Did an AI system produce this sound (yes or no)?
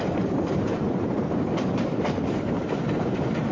yes